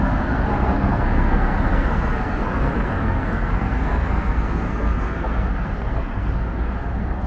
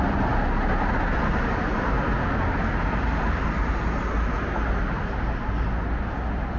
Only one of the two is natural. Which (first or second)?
second